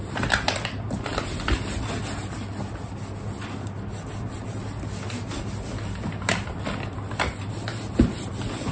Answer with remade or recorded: recorded